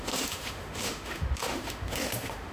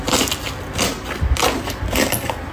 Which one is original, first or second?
second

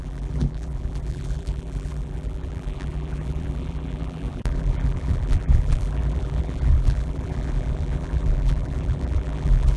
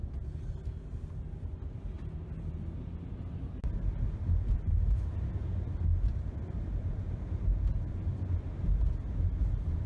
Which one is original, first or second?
second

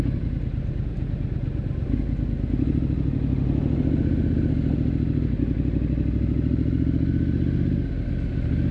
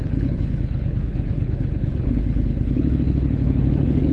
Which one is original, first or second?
first